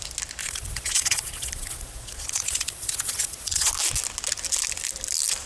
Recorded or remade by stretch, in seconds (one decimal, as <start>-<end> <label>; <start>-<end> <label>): 0.0-0.4 recorded; 0.4-3.7 remade; 3.7-5.5 recorded